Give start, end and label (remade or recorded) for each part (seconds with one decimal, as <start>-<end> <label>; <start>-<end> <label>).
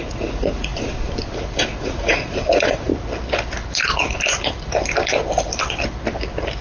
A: 0.0-0.7 remade; 0.7-1.8 recorded; 1.8-2.9 remade; 2.9-6.6 recorded